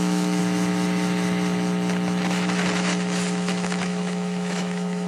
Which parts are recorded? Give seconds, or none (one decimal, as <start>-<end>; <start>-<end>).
0.4-3.5